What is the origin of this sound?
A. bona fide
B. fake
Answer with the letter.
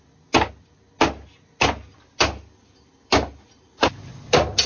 A